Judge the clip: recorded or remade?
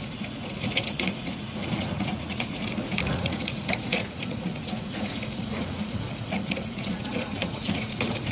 remade